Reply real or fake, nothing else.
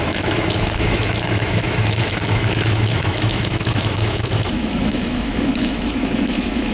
fake